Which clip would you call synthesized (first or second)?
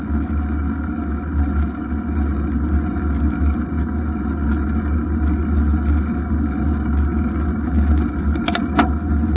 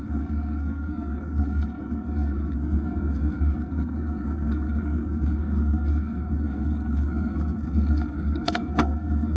second